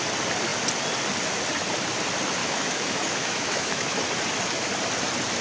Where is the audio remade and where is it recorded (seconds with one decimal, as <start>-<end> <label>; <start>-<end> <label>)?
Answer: 0.0-2.4 recorded; 2.4-4.0 remade; 4.0-5.4 recorded